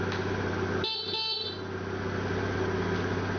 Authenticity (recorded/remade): recorded